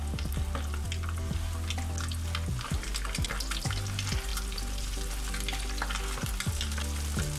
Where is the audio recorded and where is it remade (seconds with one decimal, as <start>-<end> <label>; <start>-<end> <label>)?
0.0-4.3 recorded; 4.3-5.1 remade; 5.1-7.4 recorded